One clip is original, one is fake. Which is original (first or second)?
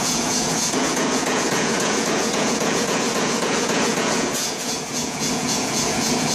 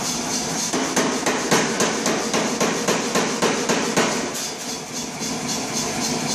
second